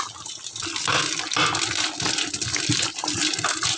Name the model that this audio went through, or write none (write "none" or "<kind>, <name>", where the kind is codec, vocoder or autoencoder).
none